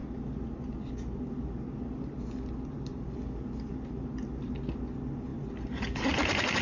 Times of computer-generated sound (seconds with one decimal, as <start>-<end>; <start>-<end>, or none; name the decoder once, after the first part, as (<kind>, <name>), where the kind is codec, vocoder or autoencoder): none